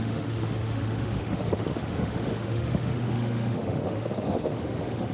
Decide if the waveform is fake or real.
fake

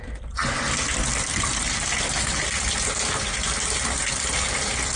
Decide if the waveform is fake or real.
real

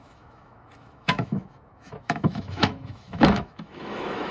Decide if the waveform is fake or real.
fake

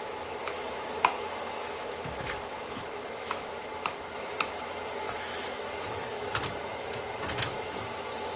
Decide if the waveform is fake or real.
fake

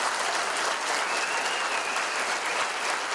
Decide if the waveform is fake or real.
real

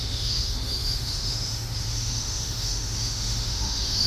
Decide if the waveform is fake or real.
fake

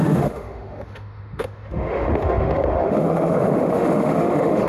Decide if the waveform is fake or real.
fake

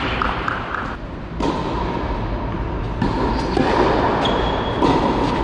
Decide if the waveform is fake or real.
real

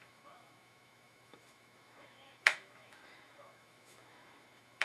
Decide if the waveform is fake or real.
fake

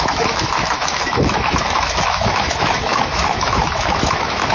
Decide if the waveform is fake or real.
fake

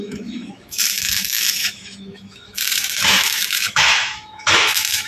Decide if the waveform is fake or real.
fake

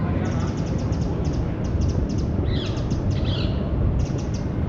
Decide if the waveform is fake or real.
real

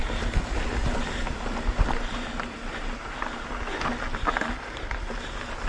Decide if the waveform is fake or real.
real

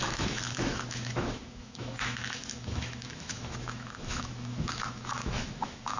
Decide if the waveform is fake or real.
fake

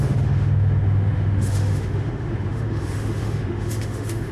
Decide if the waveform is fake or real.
fake